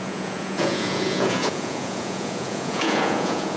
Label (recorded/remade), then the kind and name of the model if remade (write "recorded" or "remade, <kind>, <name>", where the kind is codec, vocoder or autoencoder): remade, vocoder, Vocos